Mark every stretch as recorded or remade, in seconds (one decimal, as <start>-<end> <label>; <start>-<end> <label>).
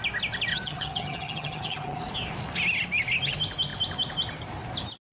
0.0-0.5 recorded; 0.5-2.0 remade; 2.0-5.1 recorded